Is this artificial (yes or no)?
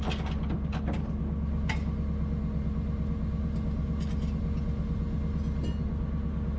no